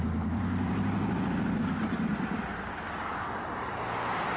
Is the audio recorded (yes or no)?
no